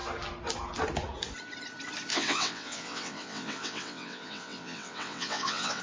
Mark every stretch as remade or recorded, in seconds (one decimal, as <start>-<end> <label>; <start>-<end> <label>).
0.0-2.1 recorded; 2.1-5.8 remade